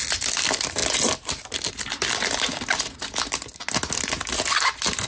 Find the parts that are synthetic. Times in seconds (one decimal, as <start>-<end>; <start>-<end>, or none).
none